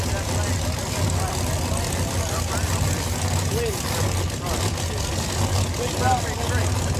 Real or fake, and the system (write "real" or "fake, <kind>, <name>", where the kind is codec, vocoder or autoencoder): real